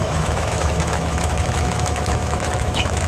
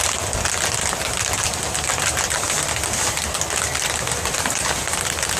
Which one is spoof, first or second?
first